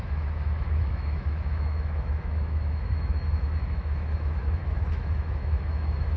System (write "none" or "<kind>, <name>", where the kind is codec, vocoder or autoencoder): autoencoder, DAC-VAE